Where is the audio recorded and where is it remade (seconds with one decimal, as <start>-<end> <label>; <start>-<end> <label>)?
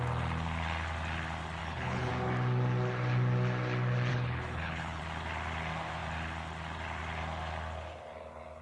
0.0-1.6 recorded; 1.6-2.1 remade; 2.1-4.1 recorded; 4.1-5.0 remade; 5.0-8.6 recorded